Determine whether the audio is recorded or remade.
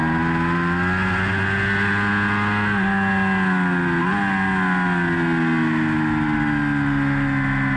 recorded